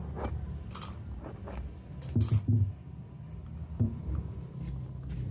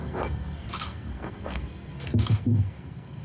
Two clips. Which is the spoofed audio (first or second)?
second